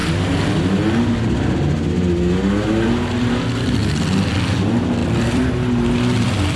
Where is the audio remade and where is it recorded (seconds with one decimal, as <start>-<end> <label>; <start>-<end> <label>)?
0.0-5.0 recorded; 5.0-5.5 remade; 5.5-6.6 recorded